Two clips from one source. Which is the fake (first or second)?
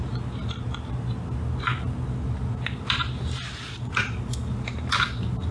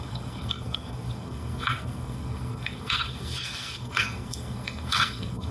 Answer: second